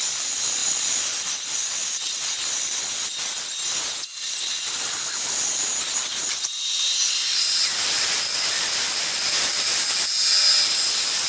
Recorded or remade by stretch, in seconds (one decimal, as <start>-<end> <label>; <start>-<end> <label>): 0.0-1.8 recorded; 1.8-2.8 remade; 2.8-6.1 recorded; 6.1-8.1 remade; 8.1-11.3 recorded